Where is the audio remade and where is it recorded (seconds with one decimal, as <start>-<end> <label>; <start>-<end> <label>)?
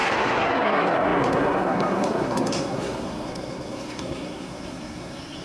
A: 0.0-5.4 remade